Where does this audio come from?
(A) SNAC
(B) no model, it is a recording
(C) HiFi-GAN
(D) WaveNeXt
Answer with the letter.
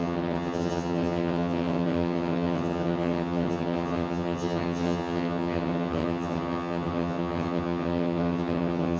C